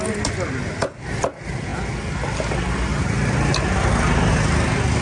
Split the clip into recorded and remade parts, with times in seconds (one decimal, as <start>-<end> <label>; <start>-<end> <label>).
0.0-5.0 recorded